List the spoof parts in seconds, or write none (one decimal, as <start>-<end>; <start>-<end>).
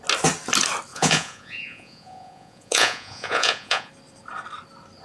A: 0.9-3.9